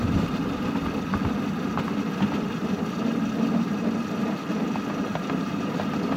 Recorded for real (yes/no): yes